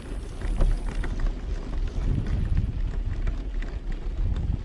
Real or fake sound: real